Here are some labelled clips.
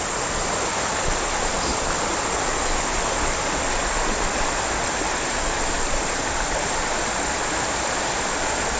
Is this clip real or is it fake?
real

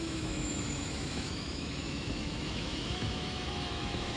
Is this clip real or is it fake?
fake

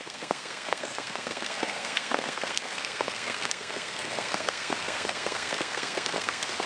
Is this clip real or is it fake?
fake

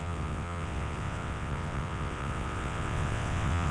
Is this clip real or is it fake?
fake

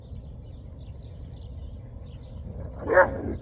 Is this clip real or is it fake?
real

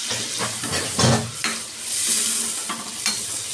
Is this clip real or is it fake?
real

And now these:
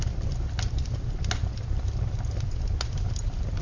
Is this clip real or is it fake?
real